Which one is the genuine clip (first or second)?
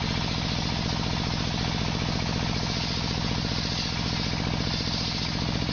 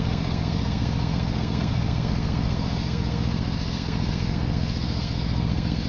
first